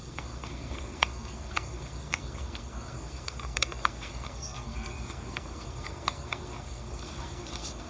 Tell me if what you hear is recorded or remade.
remade